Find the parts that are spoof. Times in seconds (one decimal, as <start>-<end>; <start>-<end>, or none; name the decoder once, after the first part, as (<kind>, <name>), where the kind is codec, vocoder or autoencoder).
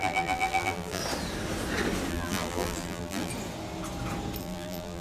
0.0-1.0 (vocoder, BigVGAN v2); 2.1-3.3; 4.4-5.0